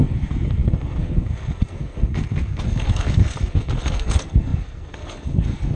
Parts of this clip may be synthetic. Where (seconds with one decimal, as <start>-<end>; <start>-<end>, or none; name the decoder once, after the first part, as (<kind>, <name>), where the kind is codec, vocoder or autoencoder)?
0.0-5.8 (codec, SNAC)